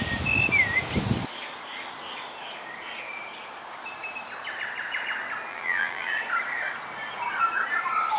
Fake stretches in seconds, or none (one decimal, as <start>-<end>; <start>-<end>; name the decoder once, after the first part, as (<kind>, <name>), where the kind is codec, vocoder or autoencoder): 5.5-6.1 (vocoder, BigVGAN v2)

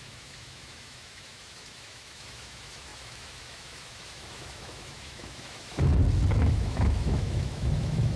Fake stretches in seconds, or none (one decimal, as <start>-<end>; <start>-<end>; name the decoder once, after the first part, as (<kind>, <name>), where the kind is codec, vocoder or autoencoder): 0.0-5.9 (autoencoder, DAC-VAE); 6.5-8.2

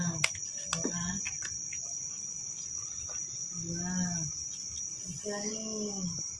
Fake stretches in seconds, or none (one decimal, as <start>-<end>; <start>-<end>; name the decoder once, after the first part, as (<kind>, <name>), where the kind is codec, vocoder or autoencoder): none

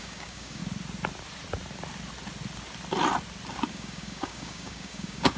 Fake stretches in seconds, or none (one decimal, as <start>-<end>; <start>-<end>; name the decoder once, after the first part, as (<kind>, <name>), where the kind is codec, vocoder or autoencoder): 0.0-0.6 (codec, DAC); 3.7-5.4

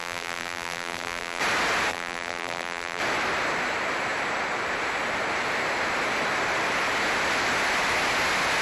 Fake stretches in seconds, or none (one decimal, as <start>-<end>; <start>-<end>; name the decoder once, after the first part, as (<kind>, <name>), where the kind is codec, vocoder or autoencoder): 0.0-1.4 (vocoder, BigVGAN v2); 1.9-3.0

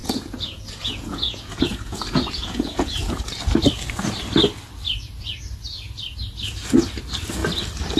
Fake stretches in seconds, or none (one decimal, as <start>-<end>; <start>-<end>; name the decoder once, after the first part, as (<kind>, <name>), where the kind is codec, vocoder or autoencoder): 0.0-3.4 (vocoder, Vocos)

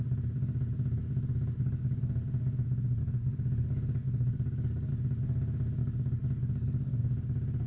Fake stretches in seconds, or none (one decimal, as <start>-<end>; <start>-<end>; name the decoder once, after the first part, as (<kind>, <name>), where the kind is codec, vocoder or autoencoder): 1.0-2.0 (codec, DAC); 3.0-4.9; 5.8-7.0

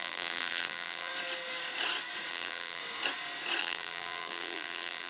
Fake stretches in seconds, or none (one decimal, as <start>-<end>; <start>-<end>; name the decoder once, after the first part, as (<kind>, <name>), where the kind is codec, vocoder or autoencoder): 0.0-1.1 (vocoder, BigVGAN v2); 2.3-2.8; 3.6-5.1